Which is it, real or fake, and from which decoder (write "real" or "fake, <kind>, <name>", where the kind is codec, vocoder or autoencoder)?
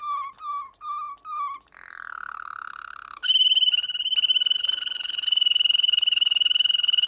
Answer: real